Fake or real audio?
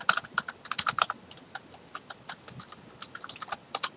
fake